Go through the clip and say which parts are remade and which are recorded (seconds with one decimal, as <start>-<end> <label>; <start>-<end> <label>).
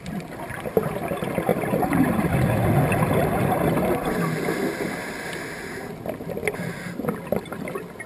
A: 0.0-1.5 recorded; 1.5-2.3 remade; 2.3-8.1 recorded